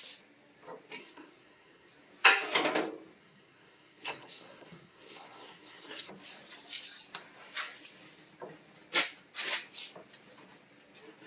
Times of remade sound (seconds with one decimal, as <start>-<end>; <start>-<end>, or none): 1.0-1.9; 3.2-6.1